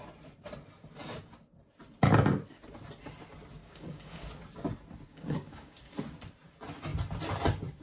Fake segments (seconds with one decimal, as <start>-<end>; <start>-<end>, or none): 3.6-4.3; 5.1-5.8